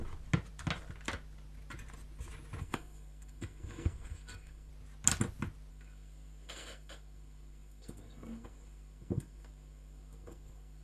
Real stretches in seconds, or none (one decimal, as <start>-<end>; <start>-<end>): 0.0-2.6; 4.7-5.7

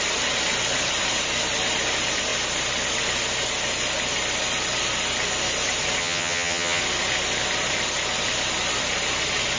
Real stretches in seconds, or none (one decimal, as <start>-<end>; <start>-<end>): 0.0-6.0; 6.8-9.6

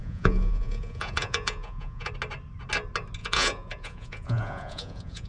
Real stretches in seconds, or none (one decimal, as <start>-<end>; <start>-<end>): 2.1-3.2